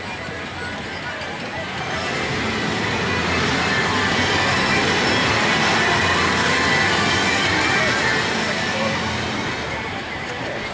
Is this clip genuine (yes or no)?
yes